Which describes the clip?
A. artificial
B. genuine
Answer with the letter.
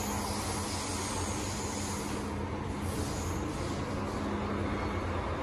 B